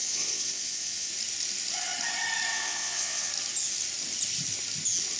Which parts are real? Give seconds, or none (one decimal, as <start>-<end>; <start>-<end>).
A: 1.1-2.5; 3.3-5.2